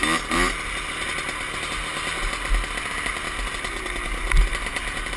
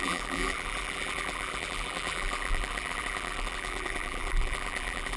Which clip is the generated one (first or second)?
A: second